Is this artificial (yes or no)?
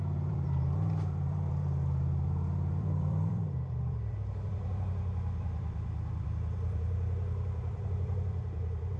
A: yes